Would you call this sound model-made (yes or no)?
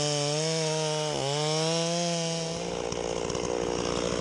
no